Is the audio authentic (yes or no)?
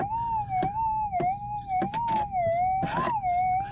yes